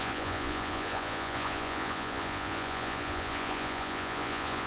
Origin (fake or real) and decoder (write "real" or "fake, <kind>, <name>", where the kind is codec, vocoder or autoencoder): fake, vocoder, Vocos